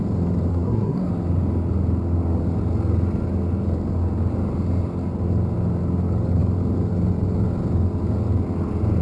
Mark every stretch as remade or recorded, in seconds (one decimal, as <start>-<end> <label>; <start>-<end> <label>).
0.0-0.5 recorded; 0.5-1.1 remade; 1.1-9.0 recorded

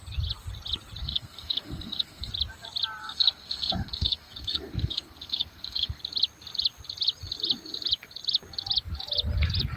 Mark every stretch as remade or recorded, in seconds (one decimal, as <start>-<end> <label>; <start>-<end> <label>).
0.0-1.0 recorded; 1.0-2.3 remade; 2.3-3.0 recorded; 3.0-6.0 remade; 6.0-9.8 recorded

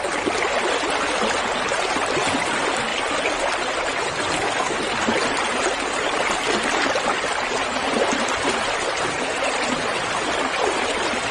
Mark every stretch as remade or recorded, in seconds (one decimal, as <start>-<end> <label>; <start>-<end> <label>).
0.0-7.6 recorded; 7.6-8.2 remade; 8.2-11.3 recorded

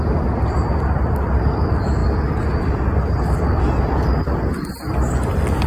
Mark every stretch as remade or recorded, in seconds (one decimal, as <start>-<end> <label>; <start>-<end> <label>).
0.0-5.7 recorded